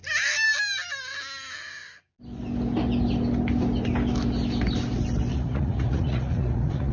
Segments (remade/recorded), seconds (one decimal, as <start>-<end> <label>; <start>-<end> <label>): 0.0-5.3 recorded; 5.3-6.9 remade